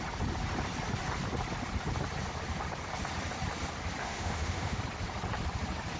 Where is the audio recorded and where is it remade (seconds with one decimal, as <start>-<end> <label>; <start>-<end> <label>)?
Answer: 0.0-4.0 recorded; 4.0-4.8 remade; 4.8-6.0 recorded